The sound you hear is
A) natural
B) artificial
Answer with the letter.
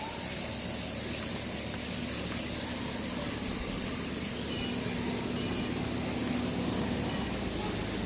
A